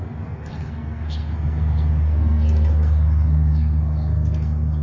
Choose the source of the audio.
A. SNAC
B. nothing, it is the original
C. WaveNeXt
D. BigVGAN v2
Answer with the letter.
A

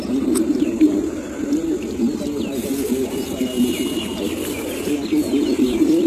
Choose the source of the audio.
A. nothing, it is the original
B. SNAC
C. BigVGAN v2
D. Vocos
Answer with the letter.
A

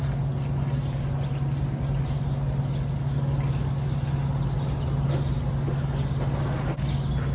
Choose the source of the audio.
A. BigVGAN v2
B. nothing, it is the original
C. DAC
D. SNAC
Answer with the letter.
B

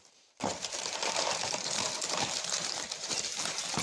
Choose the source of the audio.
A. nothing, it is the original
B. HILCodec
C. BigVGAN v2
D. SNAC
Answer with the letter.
C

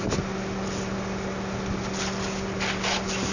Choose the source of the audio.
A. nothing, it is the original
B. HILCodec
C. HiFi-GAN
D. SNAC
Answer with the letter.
A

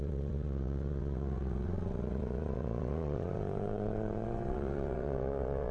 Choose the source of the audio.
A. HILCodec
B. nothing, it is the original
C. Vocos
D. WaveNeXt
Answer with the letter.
D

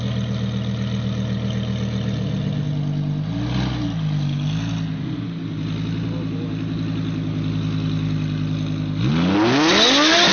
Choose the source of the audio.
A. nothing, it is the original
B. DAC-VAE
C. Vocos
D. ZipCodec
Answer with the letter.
A